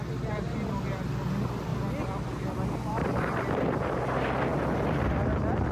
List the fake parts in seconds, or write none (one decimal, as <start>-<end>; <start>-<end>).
none